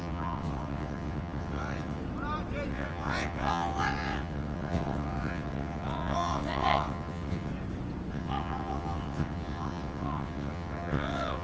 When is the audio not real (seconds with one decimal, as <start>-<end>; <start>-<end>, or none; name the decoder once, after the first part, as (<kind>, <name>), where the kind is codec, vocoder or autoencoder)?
0.0-2.0 (vocoder, WaveNeXt); 2.7-7.5; 8.1-11.4